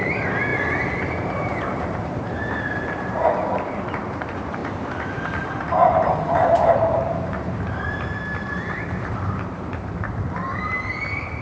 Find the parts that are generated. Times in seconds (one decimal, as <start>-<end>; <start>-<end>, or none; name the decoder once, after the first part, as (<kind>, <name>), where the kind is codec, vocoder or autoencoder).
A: 0.0-0.5 (vocoder, BigVGAN v2); 1.1-11.4